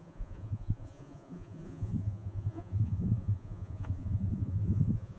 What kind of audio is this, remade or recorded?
remade